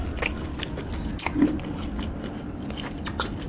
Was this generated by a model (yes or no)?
no